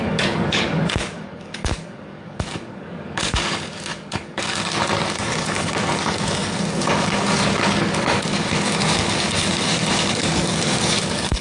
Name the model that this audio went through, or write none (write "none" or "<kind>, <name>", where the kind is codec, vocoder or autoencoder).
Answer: codec, DAC